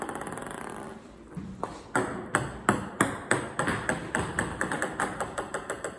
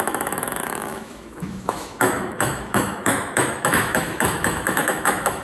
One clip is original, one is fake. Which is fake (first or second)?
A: second